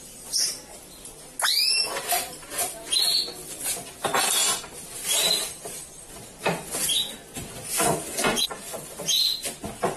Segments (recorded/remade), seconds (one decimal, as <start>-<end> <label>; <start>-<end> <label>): 0.0-10.0 recorded

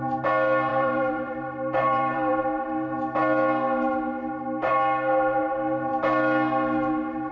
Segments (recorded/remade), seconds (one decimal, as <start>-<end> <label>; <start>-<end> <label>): 0.0-0.7 recorded; 0.7-2.4 remade; 2.4-7.3 recorded